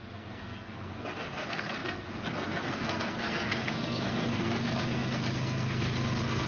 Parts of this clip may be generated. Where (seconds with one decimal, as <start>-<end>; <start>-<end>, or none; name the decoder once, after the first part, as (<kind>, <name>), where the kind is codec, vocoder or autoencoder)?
0.0-6.5 (codec, SNAC)